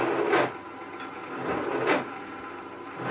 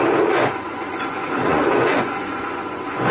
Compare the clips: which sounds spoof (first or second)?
second